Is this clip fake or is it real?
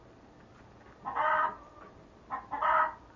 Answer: real